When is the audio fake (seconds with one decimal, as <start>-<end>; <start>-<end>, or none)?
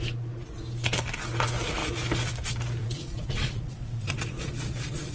2.8-4.5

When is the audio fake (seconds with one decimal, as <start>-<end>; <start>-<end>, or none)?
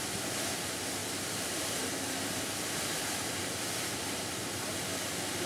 1.0-4.3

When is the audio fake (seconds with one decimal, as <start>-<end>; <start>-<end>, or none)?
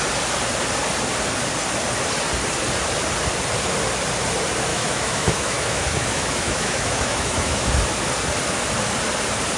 4.7-7.7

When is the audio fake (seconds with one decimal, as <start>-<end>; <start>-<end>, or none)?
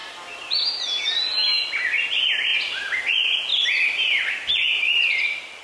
2.5-3.1; 3.5-5.6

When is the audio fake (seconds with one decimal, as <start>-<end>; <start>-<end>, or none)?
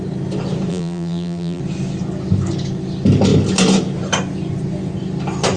0.7-1.6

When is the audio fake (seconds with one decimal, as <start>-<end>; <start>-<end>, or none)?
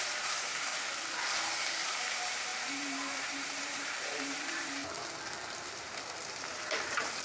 0.0-0.7; 2.0-4.8; 5.7-7.2